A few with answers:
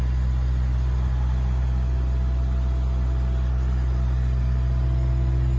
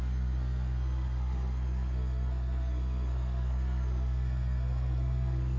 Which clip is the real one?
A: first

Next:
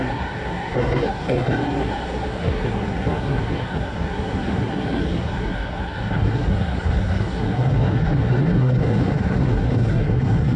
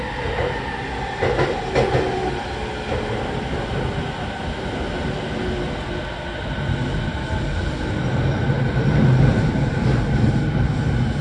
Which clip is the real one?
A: second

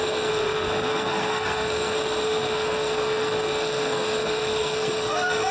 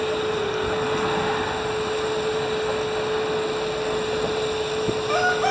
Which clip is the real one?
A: second